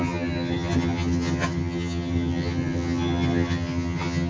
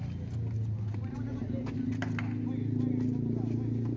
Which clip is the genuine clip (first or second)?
second